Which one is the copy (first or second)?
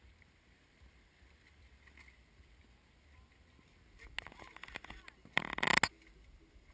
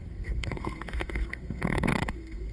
second